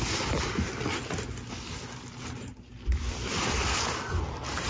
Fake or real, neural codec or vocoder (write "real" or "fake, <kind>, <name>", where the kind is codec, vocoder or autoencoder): real